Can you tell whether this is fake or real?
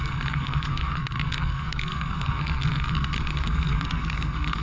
fake